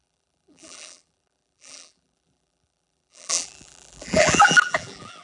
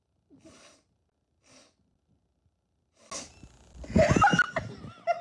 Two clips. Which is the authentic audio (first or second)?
second